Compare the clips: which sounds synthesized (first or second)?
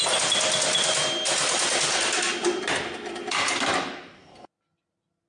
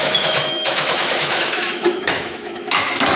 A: second